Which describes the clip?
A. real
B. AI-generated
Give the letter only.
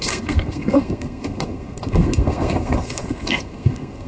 B